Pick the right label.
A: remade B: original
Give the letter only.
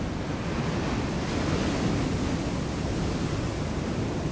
B